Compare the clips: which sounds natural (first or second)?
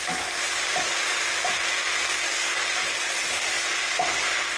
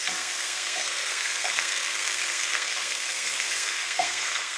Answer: first